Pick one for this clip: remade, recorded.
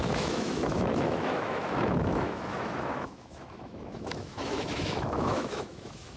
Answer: remade